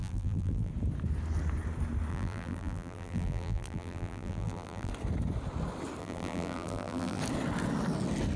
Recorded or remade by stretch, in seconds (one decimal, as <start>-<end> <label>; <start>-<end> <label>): 0.0-0.7 remade; 0.7-2.1 recorded; 2.1-4.9 remade; 4.9-6.0 recorded; 6.0-7.2 remade; 7.2-8.4 recorded